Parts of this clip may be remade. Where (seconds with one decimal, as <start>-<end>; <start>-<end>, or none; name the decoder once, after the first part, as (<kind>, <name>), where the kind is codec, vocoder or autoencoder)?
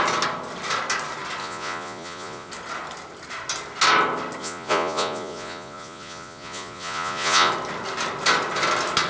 1.4-2.5 (vocoder, Vocos); 4.4-7.5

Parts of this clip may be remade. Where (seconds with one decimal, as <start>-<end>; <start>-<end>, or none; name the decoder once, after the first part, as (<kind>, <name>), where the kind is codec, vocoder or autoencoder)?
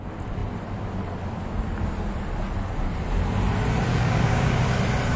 3.9-4.6 (codec, DAC)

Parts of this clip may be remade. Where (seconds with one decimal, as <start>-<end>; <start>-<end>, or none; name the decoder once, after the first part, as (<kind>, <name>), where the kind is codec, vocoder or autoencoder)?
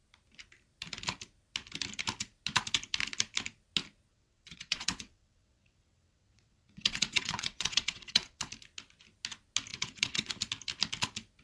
4.1-8.5 (vocoder, WaveNeXt); 9.7-10.3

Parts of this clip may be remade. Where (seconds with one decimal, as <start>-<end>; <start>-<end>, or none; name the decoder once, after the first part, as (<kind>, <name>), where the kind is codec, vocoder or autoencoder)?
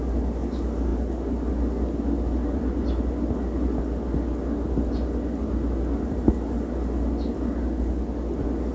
none